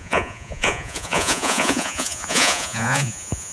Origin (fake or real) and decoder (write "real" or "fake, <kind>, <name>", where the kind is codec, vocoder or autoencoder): fake, vocoder, Vocos